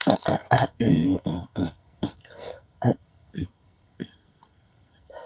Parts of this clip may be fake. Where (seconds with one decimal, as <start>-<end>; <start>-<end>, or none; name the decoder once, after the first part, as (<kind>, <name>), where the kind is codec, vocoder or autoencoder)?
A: 0.0-5.3 (codec, SNAC)